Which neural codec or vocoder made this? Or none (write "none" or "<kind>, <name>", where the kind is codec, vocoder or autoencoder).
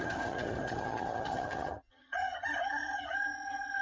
vocoder, HiFi-GAN